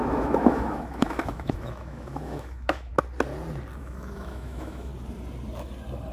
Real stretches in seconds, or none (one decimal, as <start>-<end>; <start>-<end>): 2.9-3.8; 4.9-6.1